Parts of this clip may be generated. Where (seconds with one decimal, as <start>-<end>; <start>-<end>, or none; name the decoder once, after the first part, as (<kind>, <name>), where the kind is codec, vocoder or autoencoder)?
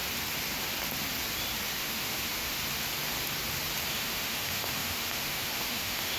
1.8-2.6 (autoencoder, DAC-VAE); 3.9-6.2